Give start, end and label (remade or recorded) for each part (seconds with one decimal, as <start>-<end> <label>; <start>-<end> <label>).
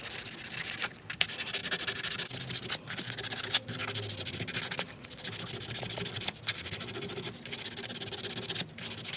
0.0-9.2 recorded